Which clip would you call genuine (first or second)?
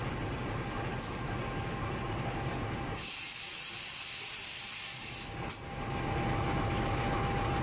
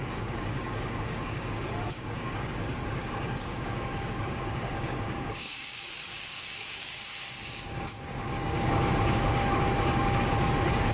first